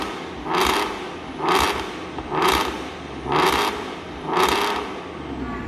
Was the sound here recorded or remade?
recorded